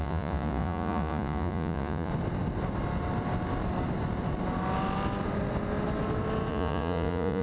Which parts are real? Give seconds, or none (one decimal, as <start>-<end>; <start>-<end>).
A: 2.1-6.5

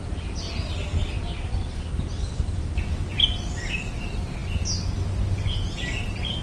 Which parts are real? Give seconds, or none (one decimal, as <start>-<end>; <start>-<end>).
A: 0.0-6.4

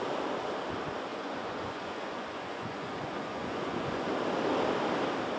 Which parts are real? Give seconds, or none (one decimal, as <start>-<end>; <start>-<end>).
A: 0.0-1.1; 4.1-5.4

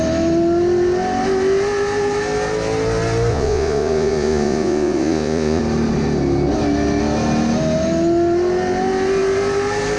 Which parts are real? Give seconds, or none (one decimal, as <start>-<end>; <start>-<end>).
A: 0.0-3.3; 5.6-10.0